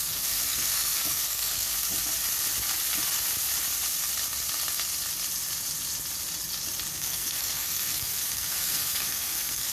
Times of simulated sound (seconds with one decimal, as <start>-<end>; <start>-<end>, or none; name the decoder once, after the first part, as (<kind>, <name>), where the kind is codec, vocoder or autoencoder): 0.0-1.7 (codec, SNAC); 6.9-9.7